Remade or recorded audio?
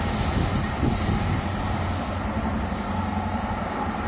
recorded